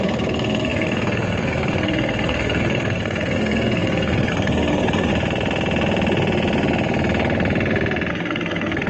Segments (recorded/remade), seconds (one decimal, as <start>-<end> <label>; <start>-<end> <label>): 0.0-5.1 remade; 5.1-8.1 recorded; 8.1-8.9 remade